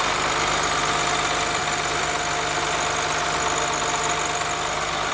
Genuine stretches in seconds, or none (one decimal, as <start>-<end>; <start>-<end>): 0.0-5.1